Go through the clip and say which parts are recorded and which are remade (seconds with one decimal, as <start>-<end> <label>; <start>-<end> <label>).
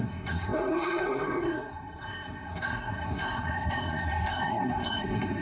0.0-5.4 remade